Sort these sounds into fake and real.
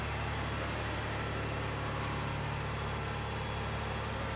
real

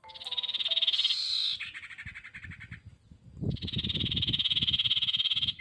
real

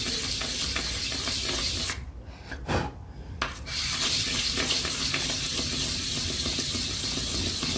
real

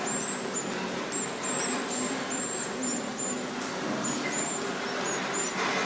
real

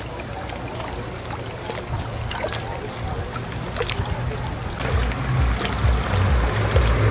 real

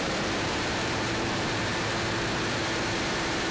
fake